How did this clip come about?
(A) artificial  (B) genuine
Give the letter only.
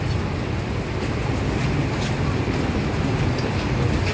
B